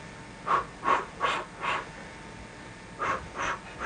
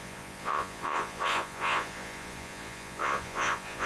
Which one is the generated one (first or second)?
second